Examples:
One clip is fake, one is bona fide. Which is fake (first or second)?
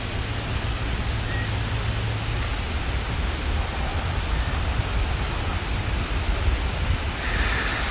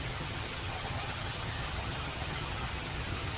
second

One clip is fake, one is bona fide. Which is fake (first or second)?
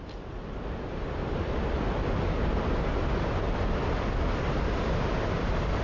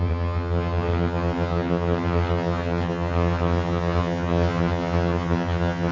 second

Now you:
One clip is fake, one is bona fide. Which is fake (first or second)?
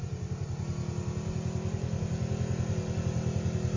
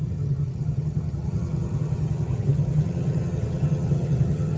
second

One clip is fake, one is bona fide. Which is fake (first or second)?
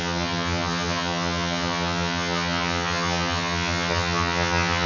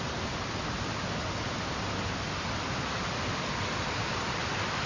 first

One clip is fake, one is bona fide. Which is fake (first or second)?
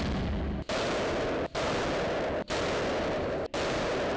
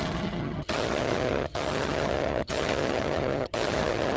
second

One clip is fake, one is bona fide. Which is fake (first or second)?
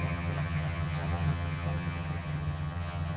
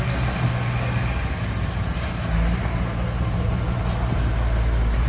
first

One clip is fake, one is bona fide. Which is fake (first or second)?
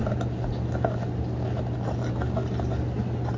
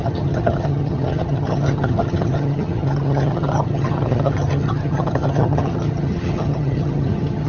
second